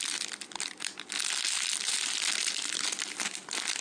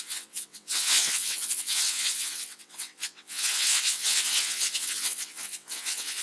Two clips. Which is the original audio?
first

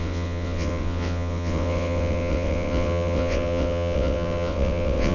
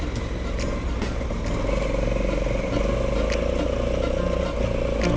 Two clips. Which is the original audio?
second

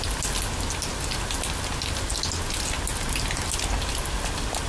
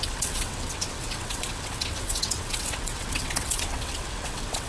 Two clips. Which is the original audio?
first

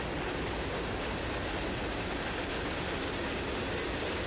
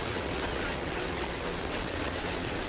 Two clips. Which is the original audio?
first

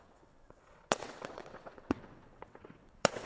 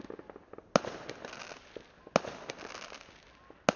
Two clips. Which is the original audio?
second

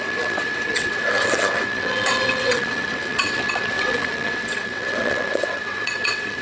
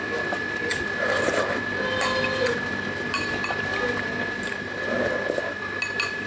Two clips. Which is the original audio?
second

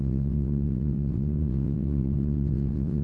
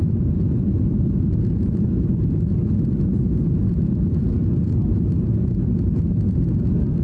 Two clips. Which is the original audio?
second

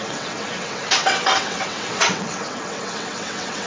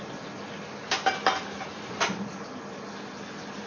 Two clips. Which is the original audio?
second